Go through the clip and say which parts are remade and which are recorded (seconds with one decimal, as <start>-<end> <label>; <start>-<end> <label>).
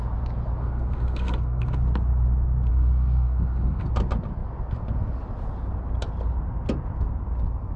0.0-0.6 recorded; 0.6-1.8 remade; 1.8-2.7 recorded; 2.7-3.9 remade; 3.9-7.8 recorded